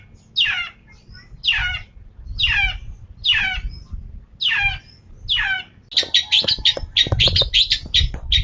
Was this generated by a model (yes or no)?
no